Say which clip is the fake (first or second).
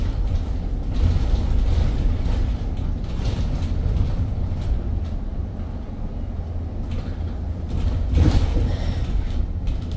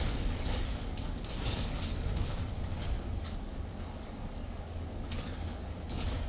second